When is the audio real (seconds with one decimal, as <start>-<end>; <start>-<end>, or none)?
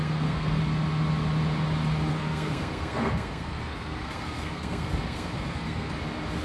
0.6-2.1; 5.9-6.4